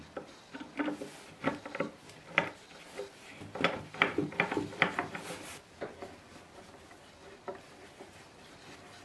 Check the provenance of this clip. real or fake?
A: real